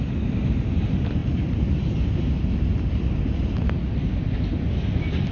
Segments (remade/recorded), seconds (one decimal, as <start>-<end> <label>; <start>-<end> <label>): 0.0-5.3 recorded